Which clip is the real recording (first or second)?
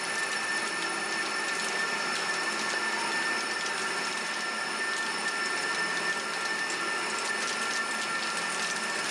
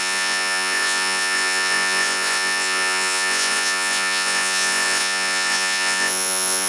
first